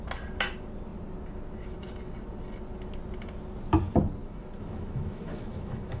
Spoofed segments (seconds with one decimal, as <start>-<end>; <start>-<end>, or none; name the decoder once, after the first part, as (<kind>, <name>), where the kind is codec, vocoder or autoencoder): 4.2-6.0 (autoencoder, DAC-VAE)